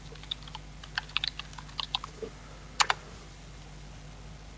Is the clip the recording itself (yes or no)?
yes